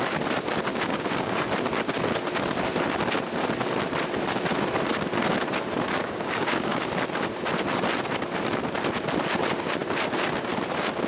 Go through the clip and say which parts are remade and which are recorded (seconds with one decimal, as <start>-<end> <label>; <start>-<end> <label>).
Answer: 0.0-0.7 recorded; 0.7-1.4 remade; 1.4-6.0 recorded; 6.0-6.9 remade; 6.9-11.1 recorded